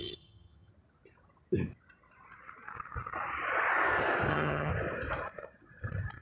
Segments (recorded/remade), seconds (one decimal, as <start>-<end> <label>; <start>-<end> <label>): 0.0-0.7 remade; 0.7-4.3 recorded; 4.3-4.7 remade; 4.7-6.2 recorded